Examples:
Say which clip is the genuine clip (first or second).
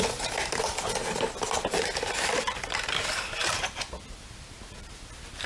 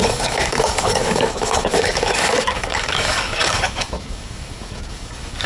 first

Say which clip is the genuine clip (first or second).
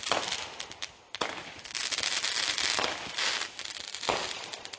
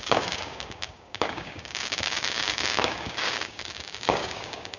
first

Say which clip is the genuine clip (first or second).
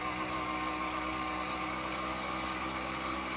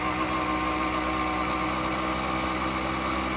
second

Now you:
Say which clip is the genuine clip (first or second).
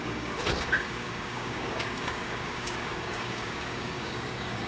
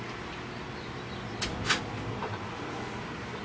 second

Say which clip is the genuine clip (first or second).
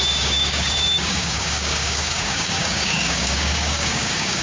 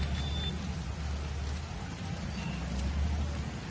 second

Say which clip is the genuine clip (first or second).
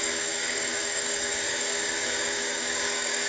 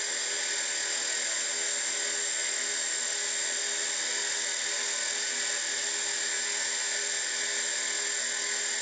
second